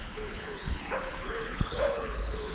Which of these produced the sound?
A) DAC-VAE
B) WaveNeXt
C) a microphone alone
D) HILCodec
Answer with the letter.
D